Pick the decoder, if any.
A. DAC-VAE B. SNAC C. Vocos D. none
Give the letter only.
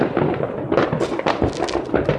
D